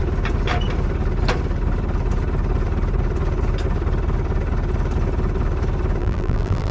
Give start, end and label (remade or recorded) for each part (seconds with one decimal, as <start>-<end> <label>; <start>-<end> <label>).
0.0-6.0 recorded; 6.0-6.7 remade